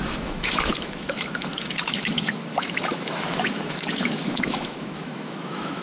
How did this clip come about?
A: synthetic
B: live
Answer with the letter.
A